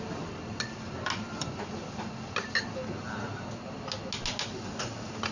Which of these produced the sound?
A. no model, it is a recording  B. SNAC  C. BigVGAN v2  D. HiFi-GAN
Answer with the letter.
A